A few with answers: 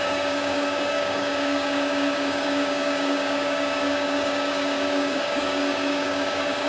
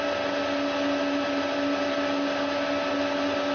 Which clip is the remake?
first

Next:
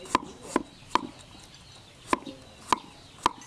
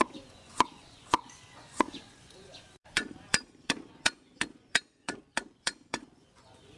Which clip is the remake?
second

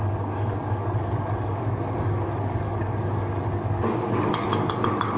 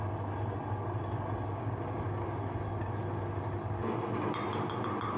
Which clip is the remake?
first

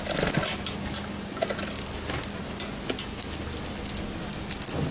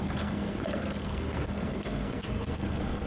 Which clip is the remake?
second